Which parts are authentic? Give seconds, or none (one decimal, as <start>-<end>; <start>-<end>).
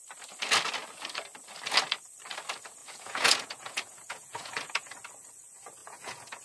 0.0-2.8; 4.9-5.8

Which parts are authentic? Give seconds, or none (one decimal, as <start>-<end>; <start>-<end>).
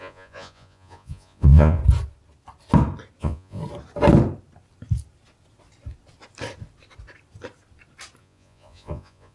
1.8-3.2; 3.6-8.2